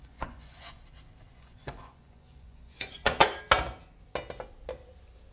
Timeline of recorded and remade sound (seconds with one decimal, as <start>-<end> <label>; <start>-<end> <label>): 0.0-0.8 remade; 0.8-1.3 recorded; 1.3-3.4 remade; 3.4-5.3 recorded